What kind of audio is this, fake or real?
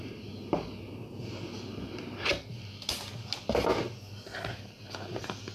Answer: real